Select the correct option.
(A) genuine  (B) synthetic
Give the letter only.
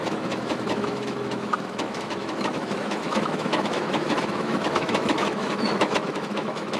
B